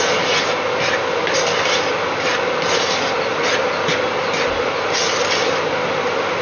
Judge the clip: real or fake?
real